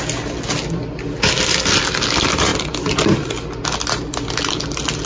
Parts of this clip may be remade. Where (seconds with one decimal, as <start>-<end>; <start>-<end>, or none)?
none